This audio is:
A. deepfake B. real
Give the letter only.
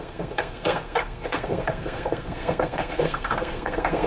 A